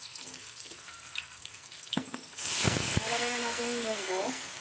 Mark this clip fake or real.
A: fake